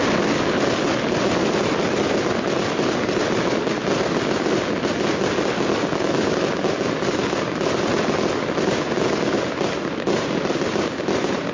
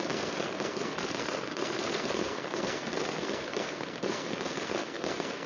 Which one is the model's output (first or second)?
second